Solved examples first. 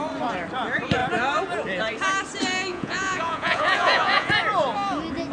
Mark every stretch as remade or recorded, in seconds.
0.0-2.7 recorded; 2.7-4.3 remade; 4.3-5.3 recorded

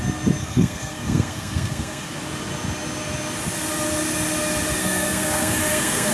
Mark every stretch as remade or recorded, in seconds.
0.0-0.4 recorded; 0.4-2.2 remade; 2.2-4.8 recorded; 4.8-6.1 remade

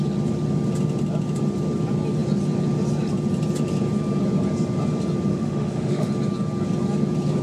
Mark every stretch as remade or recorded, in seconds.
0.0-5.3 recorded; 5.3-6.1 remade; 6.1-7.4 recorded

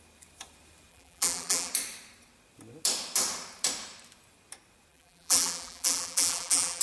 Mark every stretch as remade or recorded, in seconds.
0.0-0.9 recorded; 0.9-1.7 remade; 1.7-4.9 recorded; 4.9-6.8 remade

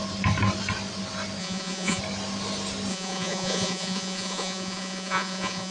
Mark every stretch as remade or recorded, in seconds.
0.0-1.4 recorded; 1.4-2.0 remade; 2.0-2.9 recorded; 2.9-5.7 remade

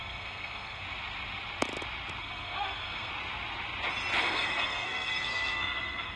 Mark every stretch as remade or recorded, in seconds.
0.0-0.8 remade; 0.8-2.2 recorded; 2.2-3.1 remade; 3.1-4.2 recorded; 4.2-6.2 remade

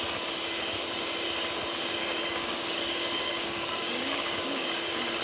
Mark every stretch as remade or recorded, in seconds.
0.0-2.0 recorded; 2.0-5.2 remade

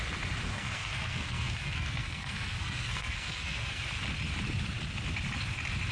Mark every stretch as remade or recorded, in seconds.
0.0-0.5 recorded; 0.5-3.8 remade; 3.8-5.9 recorded